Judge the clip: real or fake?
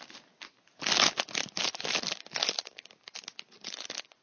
real